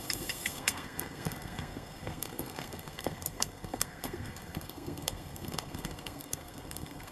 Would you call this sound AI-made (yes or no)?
yes